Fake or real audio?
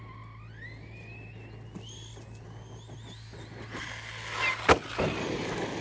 real